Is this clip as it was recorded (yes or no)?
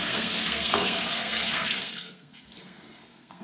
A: no